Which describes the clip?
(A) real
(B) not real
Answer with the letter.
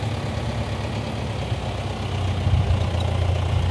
A